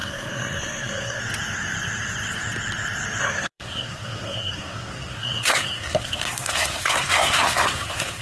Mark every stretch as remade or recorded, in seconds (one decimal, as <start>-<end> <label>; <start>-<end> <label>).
0.0-1.2 remade; 1.2-3.2 recorded; 3.2-8.2 remade